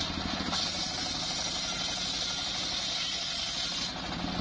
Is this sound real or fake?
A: real